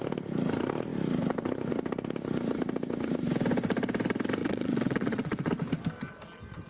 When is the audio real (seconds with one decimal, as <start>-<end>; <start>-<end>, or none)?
0.0-4.4; 5.5-6.7